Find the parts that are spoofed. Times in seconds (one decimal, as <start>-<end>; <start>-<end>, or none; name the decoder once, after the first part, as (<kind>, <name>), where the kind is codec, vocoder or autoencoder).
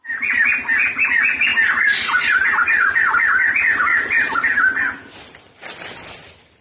none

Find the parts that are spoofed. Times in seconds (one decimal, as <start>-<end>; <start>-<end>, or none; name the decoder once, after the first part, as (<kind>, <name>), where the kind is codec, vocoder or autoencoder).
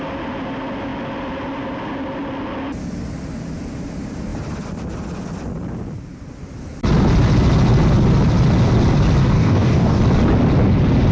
9.2-10.0 (codec, DAC)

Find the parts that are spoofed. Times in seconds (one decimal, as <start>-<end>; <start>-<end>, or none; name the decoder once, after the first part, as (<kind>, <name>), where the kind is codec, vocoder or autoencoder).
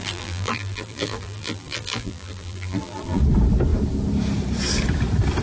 0.0-3.2 (vocoder, BigVGAN v2)